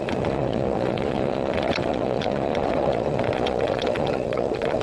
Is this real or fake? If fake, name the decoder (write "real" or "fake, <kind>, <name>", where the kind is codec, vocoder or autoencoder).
fake, vocoder, Vocos